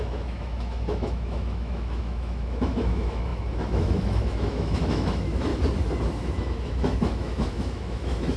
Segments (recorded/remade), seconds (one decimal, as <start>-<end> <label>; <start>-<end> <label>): 0.0-5.5 remade; 5.5-6.1 recorded; 6.1-8.4 remade